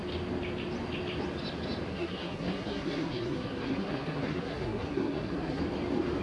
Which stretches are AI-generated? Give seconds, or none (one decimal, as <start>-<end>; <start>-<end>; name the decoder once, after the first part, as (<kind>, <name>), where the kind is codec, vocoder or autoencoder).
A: 1.9-5.6 (codec, SNAC)